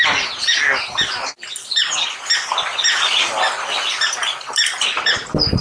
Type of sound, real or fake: real